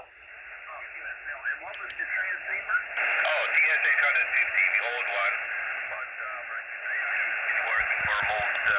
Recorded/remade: recorded